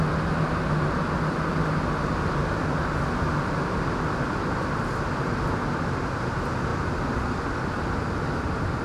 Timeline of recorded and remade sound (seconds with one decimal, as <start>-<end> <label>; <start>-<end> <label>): 0.0-8.8 recorded